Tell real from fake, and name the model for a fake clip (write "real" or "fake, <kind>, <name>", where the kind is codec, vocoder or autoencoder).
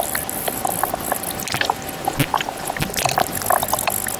real